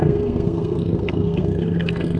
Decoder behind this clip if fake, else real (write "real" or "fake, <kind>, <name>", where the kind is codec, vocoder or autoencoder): fake, codec, SNAC